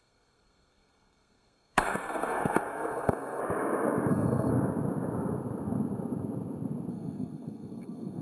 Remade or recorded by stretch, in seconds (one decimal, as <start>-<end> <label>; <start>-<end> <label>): 0.0-3.4 remade; 3.4-4.1 recorded; 4.1-4.5 remade; 4.5-6.9 recorded; 6.9-8.2 remade